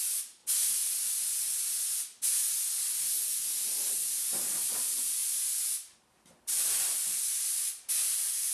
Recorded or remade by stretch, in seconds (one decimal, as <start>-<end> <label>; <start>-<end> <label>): 0.0-0.4 remade; 0.4-3.9 recorded; 3.9-8.5 remade